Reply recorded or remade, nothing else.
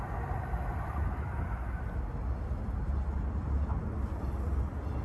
recorded